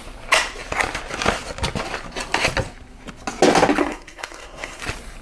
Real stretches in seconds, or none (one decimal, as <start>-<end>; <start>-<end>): 0.0-3.8; 4.8-5.2